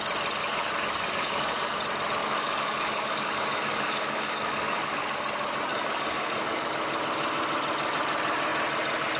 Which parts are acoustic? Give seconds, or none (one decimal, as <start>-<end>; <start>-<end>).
0.0-0.4; 1.8-2.2; 5.0-5.7; 6.7-9.2